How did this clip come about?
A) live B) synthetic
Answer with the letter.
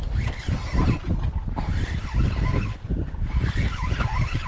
A